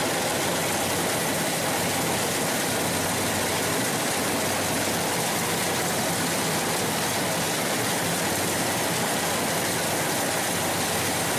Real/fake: real